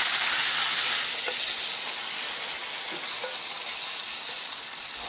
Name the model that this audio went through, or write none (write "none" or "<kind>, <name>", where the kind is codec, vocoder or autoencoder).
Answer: none